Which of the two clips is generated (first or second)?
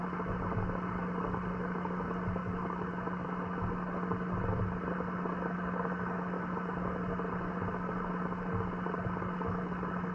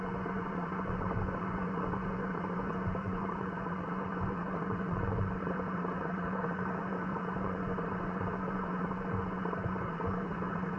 second